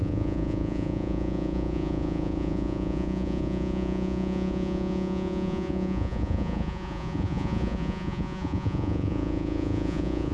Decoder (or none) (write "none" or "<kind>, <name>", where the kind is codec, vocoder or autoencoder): vocoder, Vocos